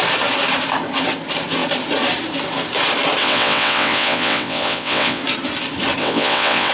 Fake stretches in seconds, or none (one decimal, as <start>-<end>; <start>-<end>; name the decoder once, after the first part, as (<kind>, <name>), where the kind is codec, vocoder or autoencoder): 3.2-5.2 (vocoder, WaveNeXt); 6.0-6.7